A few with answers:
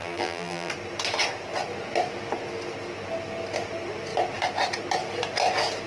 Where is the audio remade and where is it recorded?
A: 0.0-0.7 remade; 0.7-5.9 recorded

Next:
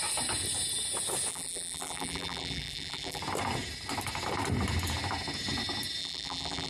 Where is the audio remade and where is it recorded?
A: 0.0-1.3 recorded; 1.3-3.2 remade; 3.2-6.0 recorded; 6.0-6.7 remade